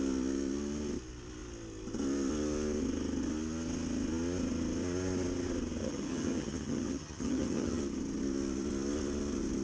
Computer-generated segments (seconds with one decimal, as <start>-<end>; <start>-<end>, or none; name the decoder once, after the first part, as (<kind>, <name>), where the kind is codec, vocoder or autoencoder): 5.8-7.8 (vocoder, HiFi-GAN)